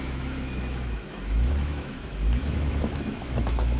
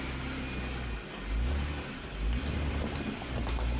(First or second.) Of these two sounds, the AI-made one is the first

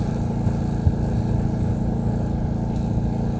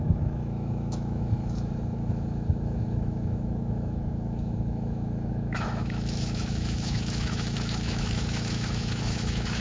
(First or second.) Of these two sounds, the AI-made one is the second